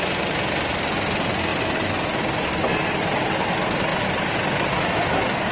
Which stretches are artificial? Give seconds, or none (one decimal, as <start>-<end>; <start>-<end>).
3.9-4.6